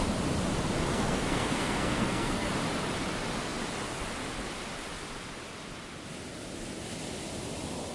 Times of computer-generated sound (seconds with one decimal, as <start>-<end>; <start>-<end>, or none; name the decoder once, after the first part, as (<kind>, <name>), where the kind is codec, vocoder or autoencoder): 0.9-2.5 (codec, SNAC)